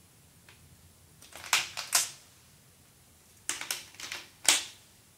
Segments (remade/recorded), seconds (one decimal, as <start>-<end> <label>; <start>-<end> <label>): 0.0-5.2 recorded